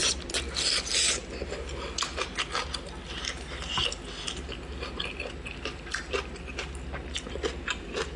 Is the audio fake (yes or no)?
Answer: no